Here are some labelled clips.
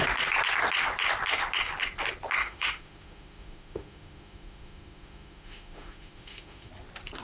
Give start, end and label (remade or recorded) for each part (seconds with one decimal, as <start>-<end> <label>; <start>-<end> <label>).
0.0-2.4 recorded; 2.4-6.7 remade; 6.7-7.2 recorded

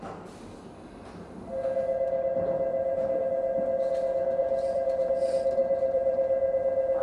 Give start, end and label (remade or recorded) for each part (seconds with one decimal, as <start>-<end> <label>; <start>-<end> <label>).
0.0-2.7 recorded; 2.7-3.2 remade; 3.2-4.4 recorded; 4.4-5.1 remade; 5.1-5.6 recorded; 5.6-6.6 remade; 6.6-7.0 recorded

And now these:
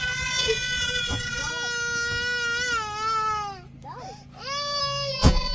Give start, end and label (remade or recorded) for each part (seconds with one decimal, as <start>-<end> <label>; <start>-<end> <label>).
0.0-1.5 remade; 1.5-4.8 recorded; 4.8-5.5 remade

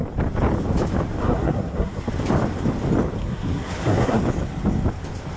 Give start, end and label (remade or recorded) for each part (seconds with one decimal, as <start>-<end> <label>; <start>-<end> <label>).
0.0-1.2 recorded; 1.2-2.1 remade; 2.1-3.2 recorded; 3.2-4.2 remade; 4.2-5.4 recorded

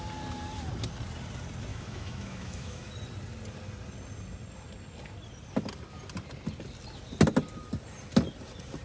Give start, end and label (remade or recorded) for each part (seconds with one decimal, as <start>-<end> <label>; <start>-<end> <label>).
0.0-1.7 recorded; 1.7-2.9 remade; 2.9-8.8 recorded